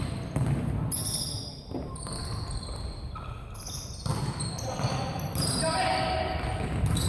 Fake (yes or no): no